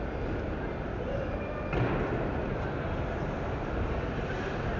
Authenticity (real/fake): real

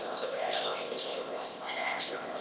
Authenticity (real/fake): fake